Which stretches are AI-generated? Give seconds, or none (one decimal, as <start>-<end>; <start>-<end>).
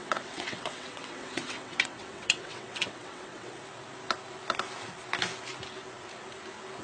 0.0-3.6